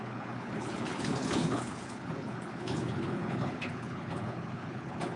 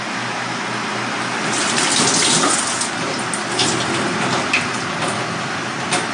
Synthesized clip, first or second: first